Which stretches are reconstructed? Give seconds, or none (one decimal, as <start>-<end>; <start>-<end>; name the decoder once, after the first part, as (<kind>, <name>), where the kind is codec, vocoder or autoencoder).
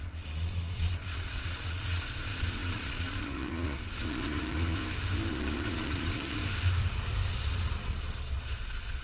0.0-4.8 (vocoder, Vocos); 5.3-6.4; 7.4-9.0